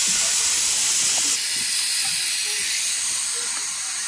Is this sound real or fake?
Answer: real